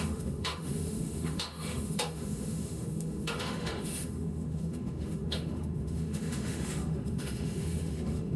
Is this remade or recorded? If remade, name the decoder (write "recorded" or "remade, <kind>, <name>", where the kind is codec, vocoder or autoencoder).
remade, autoencoder, DAC-VAE